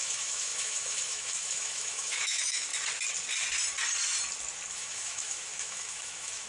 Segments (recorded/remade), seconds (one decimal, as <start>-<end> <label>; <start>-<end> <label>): 0.0-2.7 remade; 2.7-4.7 recorded; 4.7-6.5 remade

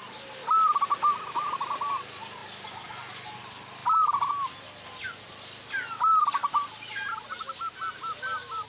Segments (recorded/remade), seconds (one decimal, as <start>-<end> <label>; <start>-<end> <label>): 0.0-8.7 recorded

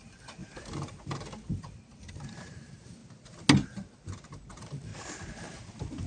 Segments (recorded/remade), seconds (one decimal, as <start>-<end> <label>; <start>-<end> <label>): 0.0-0.4 remade; 0.4-1.5 recorded; 1.5-3.0 remade; 3.0-4.5 recorded; 4.5-4.9 remade; 4.9-6.1 recorded